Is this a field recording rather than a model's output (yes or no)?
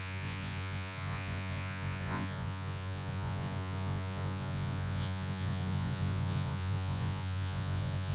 no